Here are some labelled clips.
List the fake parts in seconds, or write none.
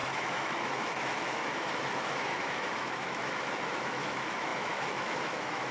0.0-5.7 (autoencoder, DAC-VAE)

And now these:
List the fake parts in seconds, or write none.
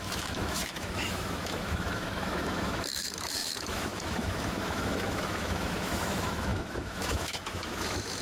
0.0-8.2 (autoencoder, DAC-VAE)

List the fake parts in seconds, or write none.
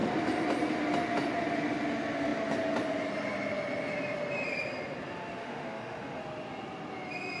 5.4-6.2 (autoencoder, DAC-VAE)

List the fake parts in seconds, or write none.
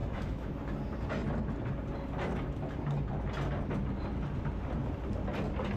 0.0-0.5 (autoencoder, DAC-VAE)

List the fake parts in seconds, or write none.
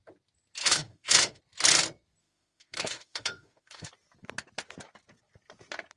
0.6-1.4 (autoencoder, DAC-VAE); 2.2-3.9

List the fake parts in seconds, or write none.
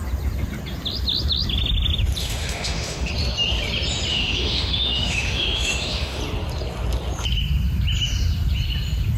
2.2-3.1 (autoencoder, DAC-VAE); 4.1-6.2